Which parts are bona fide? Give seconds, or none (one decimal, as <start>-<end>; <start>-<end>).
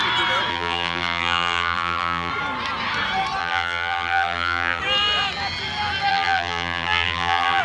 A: 0.0-0.5; 2.3-3.4; 4.8-6.1